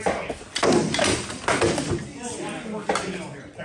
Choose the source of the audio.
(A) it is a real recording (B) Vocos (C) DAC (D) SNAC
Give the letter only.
A